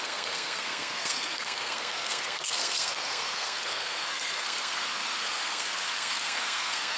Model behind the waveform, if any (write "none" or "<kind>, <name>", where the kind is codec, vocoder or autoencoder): codec, SNAC